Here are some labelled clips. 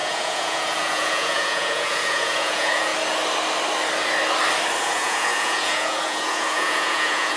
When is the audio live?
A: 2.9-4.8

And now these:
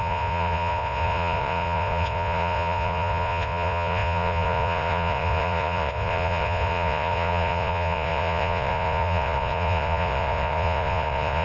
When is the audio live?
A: none

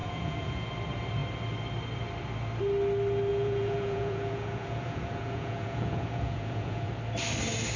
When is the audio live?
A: 0.7-3.3; 6.9-7.8